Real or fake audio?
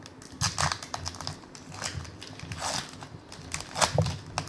real